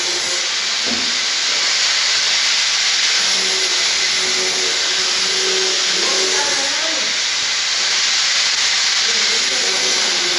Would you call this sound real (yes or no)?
yes